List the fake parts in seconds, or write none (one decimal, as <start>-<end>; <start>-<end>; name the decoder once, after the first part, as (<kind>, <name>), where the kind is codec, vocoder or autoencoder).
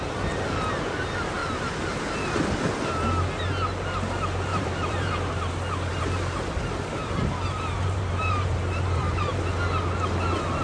4.5-5.5 (vocoder, BigVGAN v2); 5.9-9.4